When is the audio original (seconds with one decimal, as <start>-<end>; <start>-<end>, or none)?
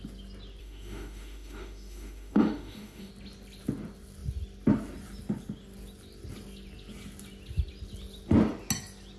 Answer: 0.0-0.6; 3.1-9.2